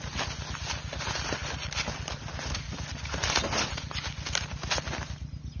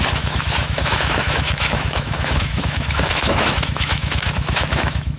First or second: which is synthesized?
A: second